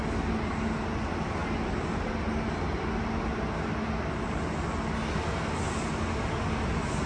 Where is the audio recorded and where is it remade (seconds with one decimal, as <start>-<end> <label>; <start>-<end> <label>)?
0.0-7.1 recorded